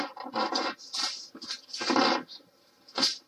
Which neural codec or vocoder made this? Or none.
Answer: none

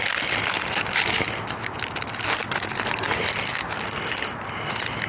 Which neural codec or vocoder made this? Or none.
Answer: none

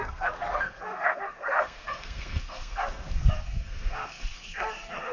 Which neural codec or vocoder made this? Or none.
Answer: codec, SNAC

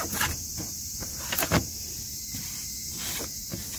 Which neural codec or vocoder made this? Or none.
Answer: none